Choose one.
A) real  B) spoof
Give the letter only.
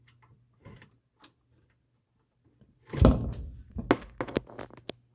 A